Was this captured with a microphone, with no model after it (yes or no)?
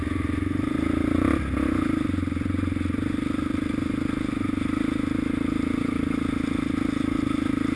yes